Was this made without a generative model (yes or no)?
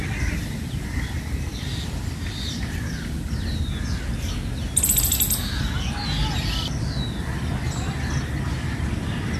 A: yes